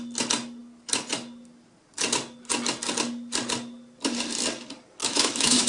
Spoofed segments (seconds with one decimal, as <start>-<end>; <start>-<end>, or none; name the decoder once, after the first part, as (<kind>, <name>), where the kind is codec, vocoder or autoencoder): 5.0-5.7 (autoencoder, DAC-VAE)